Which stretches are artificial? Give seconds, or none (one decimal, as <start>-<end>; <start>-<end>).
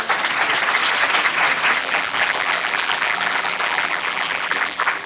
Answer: 1.8-5.1